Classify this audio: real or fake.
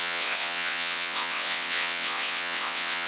fake